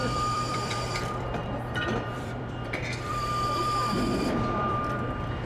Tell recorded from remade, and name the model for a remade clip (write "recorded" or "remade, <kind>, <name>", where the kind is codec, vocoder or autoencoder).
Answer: remade, vocoder, BigVGAN v2